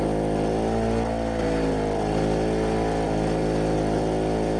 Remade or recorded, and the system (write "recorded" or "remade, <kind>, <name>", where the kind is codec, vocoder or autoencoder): recorded